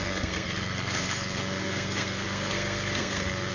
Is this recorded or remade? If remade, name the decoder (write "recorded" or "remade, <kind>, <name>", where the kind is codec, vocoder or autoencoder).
remade, codec, SNAC